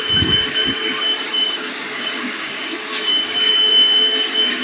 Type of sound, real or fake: fake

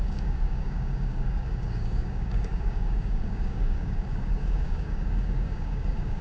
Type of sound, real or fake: fake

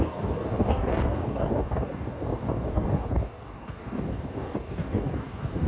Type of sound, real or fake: fake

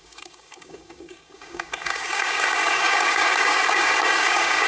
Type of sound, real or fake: fake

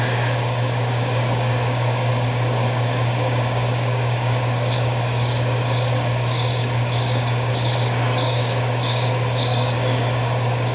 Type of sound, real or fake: fake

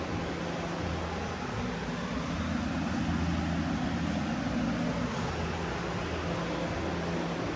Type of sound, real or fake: real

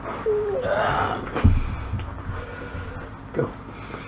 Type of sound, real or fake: real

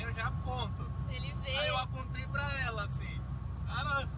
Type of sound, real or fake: real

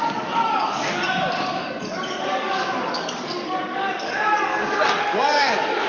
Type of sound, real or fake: fake